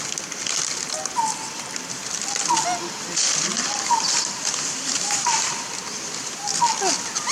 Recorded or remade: recorded